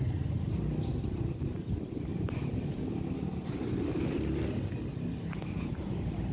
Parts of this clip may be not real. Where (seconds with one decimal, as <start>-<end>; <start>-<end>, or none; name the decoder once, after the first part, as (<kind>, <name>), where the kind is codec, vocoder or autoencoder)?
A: 2.1-2.8 (vocoder, BigVGAN v2)